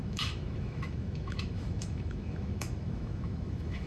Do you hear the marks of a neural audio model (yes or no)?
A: yes